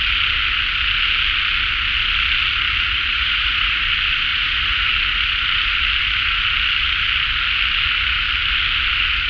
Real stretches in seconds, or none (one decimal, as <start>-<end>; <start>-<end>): 0.0-3.1; 3.8-4.3; 4.9-9.3